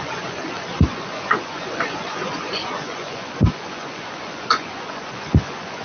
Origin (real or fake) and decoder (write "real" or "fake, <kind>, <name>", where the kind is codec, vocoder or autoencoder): fake, vocoder, Vocos